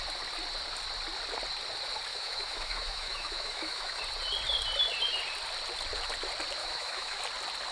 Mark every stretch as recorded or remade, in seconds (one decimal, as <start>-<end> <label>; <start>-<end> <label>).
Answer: 0.0-2.1 recorded; 2.1-4.0 remade; 4.0-6.6 recorded; 6.6-7.2 remade; 7.2-7.7 recorded